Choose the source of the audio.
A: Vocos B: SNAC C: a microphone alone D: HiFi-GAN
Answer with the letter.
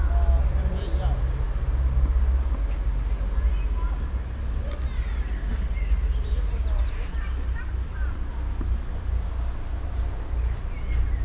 C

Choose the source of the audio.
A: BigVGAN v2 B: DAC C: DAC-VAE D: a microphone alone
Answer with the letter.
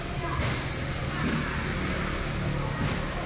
D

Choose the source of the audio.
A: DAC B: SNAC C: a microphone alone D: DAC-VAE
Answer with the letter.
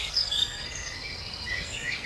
B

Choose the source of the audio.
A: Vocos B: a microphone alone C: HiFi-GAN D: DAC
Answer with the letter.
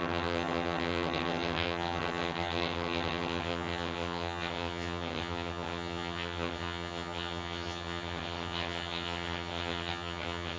C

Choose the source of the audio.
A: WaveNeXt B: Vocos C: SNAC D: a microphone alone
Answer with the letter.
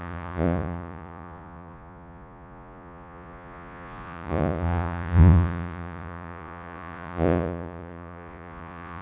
B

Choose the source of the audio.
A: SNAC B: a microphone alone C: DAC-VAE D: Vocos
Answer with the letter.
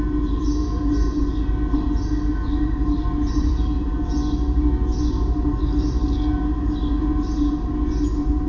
B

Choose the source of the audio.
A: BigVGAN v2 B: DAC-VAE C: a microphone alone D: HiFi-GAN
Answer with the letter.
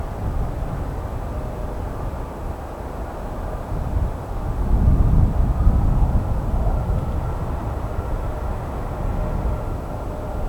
C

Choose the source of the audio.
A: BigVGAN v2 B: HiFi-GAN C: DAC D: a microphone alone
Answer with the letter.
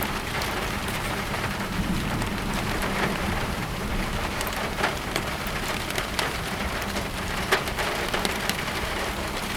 A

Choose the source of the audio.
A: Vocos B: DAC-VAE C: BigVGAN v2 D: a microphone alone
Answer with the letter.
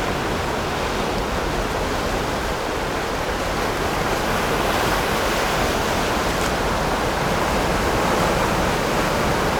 D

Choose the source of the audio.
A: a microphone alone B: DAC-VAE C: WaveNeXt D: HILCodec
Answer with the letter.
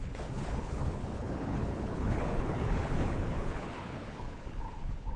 D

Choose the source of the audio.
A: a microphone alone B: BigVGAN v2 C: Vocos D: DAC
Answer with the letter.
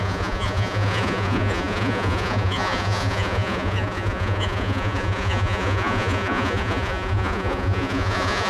C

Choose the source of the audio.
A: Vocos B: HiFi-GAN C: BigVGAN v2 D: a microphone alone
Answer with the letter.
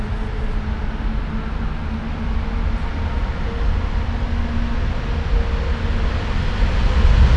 D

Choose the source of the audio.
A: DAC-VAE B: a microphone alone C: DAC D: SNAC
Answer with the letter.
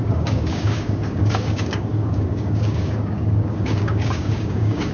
C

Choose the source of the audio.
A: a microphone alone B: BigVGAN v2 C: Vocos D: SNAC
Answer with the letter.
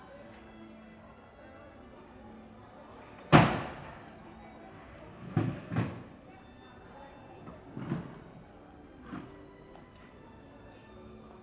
A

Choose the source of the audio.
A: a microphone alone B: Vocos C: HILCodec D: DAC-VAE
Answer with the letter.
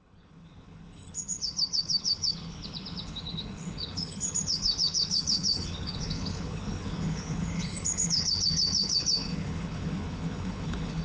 C